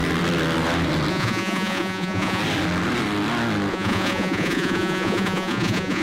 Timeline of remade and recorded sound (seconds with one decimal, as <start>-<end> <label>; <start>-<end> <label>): 0.0-1.1 recorded; 1.1-2.4 remade; 2.4-3.7 recorded; 3.7-6.0 remade

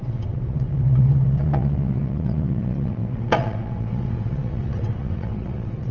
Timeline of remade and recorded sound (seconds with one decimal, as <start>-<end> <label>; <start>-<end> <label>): 0.0-5.9 remade

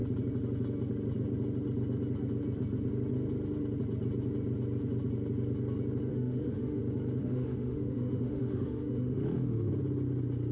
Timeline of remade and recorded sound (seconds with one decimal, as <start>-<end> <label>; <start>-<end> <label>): 0.0-6.1 recorded; 6.1-6.8 remade; 6.8-7.2 recorded; 7.2-9.7 remade; 9.7-10.5 recorded

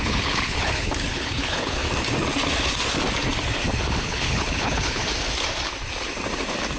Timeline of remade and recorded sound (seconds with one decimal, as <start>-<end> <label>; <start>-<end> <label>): 0.0-1.8 remade; 1.8-4.0 recorded; 4.0-5.0 remade; 5.0-6.8 recorded